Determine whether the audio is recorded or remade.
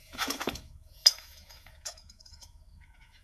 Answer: remade